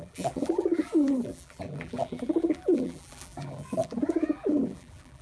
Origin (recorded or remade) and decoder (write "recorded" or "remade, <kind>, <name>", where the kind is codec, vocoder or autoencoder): remade, vocoder, BigVGAN v2